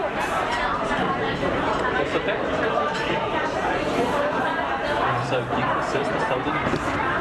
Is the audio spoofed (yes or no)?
yes